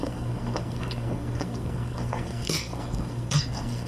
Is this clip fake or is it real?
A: fake